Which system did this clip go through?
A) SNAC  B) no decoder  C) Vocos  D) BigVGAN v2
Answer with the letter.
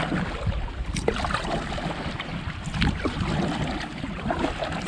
B